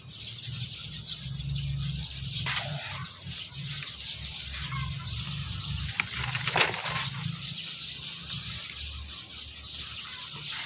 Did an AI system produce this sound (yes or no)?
no